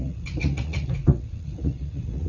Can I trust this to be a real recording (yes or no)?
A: no